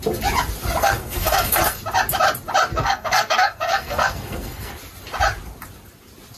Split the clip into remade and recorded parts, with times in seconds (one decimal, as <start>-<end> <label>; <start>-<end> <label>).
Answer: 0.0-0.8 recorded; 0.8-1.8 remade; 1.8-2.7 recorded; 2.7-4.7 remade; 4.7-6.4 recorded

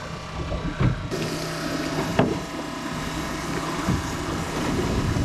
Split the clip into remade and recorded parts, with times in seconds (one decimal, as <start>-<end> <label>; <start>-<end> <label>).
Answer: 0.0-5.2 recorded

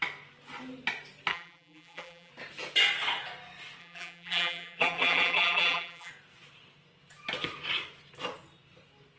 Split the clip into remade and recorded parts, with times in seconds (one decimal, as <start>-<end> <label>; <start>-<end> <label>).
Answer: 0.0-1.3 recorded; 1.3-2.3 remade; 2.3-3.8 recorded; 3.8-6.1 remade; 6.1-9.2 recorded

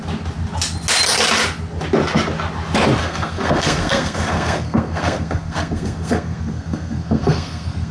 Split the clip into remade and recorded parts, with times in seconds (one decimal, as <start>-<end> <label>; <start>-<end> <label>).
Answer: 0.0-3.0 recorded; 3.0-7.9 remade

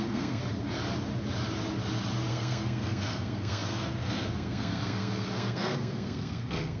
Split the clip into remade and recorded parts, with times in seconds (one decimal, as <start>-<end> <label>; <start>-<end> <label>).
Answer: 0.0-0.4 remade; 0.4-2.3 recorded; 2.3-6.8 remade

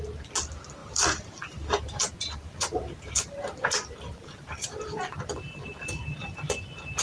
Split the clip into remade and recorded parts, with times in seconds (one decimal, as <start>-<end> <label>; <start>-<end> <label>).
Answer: 0.0-0.8 recorded; 0.8-5.0 remade; 5.0-7.0 recorded

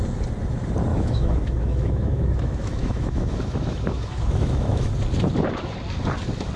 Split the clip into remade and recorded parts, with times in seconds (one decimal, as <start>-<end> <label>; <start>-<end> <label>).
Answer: 0.0-0.9 recorded; 0.9-4.9 remade; 4.9-6.6 recorded